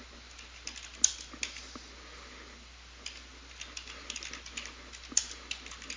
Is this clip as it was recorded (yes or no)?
yes